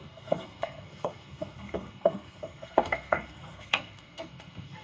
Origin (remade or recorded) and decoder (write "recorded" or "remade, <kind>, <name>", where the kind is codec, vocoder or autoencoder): remade, codec, SNAC